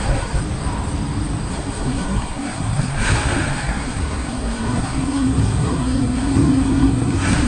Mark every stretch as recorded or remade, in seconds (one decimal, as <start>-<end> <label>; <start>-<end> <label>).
0.0-0.4 remade; 0.4-1.5 recorded; 1.5-7.5 remade